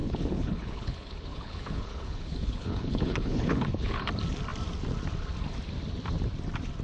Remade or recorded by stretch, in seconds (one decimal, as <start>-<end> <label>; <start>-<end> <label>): 0.0-4.1 remade; 4.1-6.8 recorded